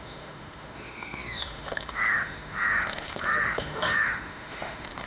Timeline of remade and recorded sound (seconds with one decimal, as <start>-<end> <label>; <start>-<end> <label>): 0.0-5.1 remade